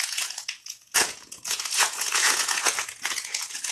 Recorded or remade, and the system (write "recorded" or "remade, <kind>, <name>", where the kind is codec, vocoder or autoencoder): remade, vocoder, Vocos